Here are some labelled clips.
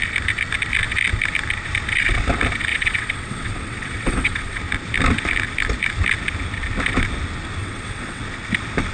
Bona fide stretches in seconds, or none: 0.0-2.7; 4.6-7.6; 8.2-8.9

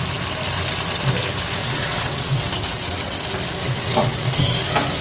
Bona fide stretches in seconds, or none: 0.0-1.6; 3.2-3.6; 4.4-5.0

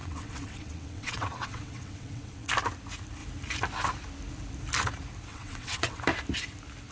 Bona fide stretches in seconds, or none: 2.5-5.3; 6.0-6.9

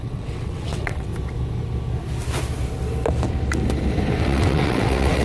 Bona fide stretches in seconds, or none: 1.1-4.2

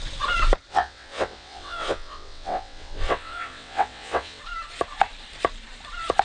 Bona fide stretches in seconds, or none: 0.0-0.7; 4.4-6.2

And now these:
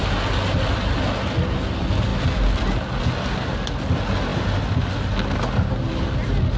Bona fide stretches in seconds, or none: 0.0-6.6

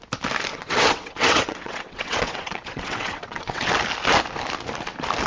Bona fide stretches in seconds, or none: 0.0-0.5; 3.7-5.3